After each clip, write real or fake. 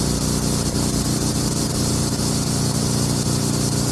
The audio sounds real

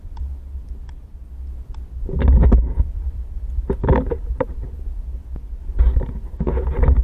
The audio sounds real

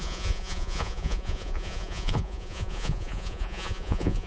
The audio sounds fake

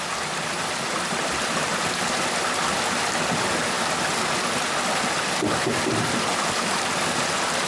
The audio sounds real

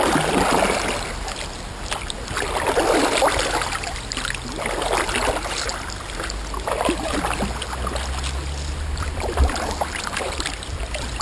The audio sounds real